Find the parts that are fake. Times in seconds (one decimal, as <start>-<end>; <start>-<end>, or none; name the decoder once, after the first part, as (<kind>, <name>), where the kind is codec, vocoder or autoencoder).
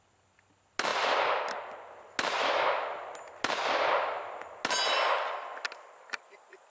none